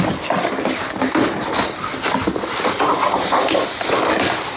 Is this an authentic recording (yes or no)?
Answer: yes